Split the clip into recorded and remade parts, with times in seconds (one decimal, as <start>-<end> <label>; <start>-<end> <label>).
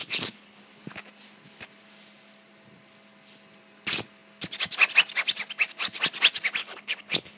0.0-0.6 remade; 0.6-6.6 recorded; 6.6-7.4 remade